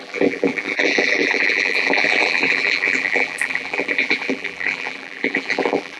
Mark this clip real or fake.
fake